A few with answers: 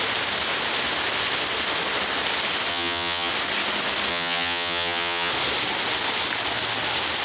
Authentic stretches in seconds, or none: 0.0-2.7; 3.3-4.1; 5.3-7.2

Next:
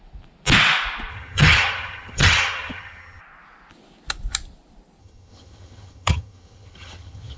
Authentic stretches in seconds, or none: 0.0-1.1; 3.2-5.0

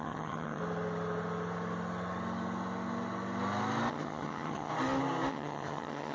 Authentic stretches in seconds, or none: 0.6-3.9; 4.7-5.3

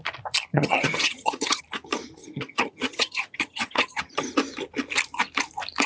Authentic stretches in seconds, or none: 0.0-0.5; 1.6-2.2; 4.2-5.9

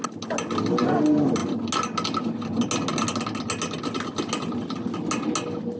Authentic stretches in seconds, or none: 0.0-5.8